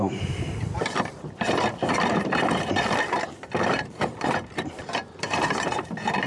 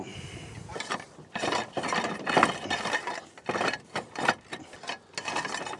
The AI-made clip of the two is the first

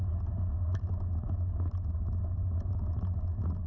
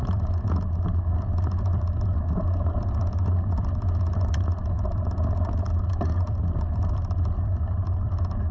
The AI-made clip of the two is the second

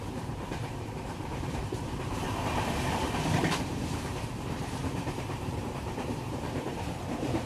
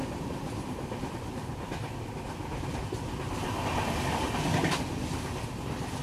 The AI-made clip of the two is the first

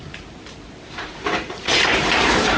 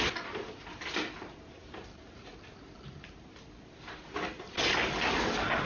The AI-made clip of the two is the first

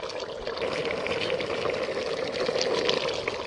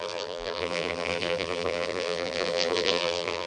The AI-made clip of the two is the second